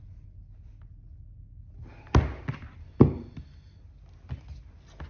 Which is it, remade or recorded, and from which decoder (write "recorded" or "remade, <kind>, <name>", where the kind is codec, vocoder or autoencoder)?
recorded